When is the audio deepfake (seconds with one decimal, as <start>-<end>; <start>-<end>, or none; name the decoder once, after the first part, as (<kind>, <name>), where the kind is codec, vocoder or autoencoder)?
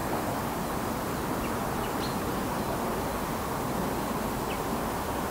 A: none